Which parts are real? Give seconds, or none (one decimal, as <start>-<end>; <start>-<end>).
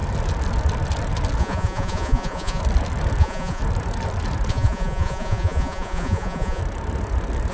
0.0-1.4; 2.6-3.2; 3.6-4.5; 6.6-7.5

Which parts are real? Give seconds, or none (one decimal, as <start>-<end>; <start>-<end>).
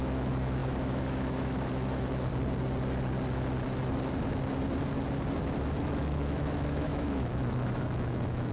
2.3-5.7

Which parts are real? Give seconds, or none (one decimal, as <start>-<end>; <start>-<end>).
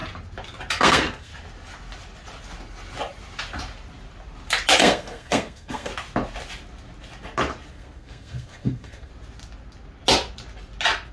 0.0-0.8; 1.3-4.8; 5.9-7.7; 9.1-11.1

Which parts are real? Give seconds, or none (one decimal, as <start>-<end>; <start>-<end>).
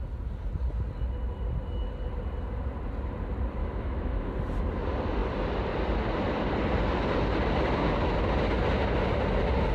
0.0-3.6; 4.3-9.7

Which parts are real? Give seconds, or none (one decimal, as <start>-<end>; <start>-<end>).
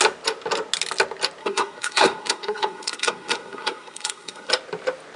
0.0-1.4; 4.5-5.2